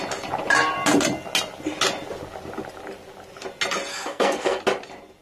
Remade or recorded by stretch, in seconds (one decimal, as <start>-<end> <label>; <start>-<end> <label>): 0.0-3.9 recorded; 3.9-4.6 remade; 4.6-5.2 recorded